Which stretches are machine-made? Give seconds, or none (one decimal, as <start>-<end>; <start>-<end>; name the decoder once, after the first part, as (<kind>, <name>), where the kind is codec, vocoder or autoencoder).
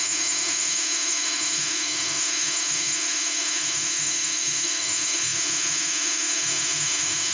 0.0-7.3 (autoencoder, DAC-VAE)